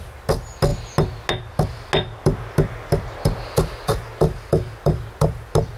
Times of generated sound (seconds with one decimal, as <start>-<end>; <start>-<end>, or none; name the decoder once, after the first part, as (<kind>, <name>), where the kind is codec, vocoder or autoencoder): none